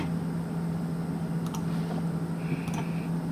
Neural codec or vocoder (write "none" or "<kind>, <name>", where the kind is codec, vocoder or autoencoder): vocoder, BigVGAN v2